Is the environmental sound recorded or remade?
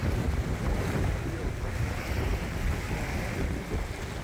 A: recorded